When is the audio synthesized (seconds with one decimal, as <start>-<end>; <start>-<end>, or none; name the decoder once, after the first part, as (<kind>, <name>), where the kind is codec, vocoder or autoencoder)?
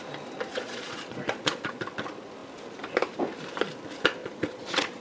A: 0.5-1.7 (vocoder, Vocos); 4.2-5.0